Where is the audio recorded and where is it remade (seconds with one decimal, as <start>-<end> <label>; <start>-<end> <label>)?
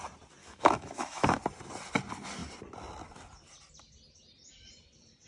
0.0-0.4 recorded; 0.4-1.4 remade; 1.4-5.3 recorded